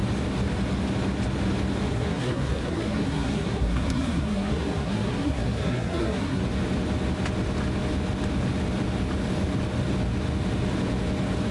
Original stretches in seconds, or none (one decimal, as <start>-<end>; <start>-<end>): 0.0-1.9; 6.4-11.5